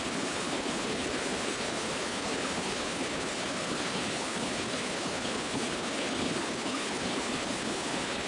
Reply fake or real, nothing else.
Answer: fake